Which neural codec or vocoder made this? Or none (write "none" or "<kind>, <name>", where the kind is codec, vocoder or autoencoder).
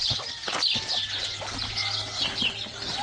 none